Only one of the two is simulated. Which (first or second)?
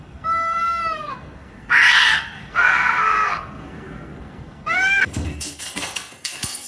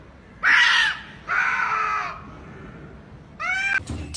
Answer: first